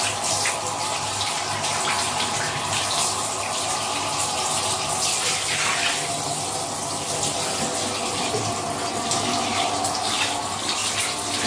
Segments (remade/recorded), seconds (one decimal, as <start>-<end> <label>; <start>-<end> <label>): 0.0-11.5 recorded